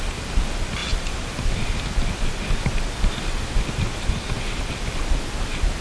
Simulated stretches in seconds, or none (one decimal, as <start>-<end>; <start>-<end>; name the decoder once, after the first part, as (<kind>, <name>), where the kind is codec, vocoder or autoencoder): none